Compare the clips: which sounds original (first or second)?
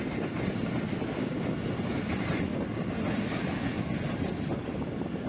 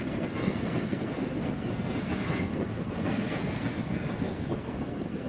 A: first